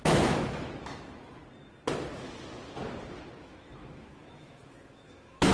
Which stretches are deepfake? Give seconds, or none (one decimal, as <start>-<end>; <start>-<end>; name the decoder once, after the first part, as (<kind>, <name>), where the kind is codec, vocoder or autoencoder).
0.0-1.4 (autoencoder, DAC-VAE); 3.4-5.5